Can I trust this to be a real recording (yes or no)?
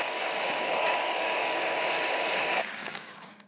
no